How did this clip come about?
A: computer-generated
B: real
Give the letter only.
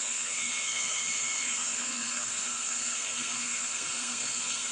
A